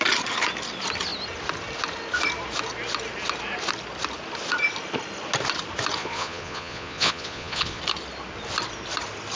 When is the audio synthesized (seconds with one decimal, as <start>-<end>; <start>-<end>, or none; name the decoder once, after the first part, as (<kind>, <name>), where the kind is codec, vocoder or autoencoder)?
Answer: 6.0-7.8 (vocoder, Vocos)